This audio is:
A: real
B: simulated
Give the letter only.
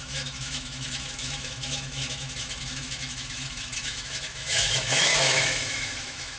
B